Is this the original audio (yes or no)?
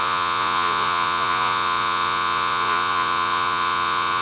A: no